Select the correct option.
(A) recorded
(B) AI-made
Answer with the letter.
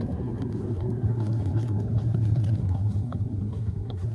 B